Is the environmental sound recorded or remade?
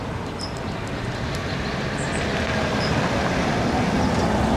recorded